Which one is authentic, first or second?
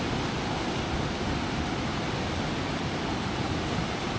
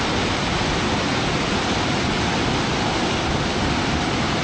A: first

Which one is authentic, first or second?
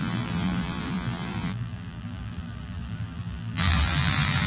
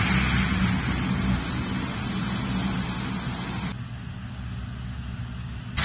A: second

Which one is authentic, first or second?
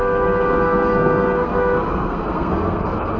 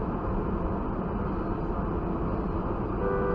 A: second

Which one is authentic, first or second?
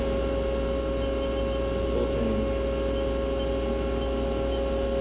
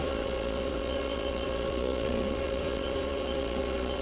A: first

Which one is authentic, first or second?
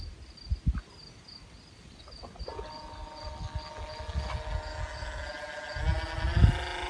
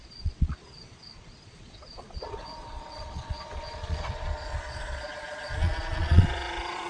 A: first